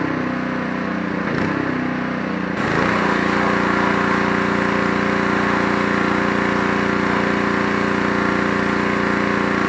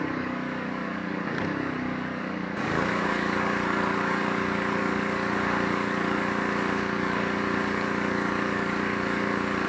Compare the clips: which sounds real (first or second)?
first